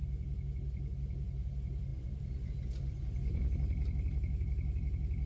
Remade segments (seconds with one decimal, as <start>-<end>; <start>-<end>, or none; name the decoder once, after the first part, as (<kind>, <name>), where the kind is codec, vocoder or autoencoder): 1.9-2.5 (vocoder, BigVGAN v2)